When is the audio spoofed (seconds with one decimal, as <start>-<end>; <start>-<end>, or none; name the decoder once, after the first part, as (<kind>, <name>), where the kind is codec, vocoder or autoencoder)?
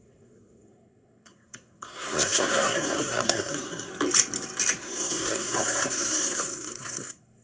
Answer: 0.0-3.9 (codec, SNAC); 4.8-7.4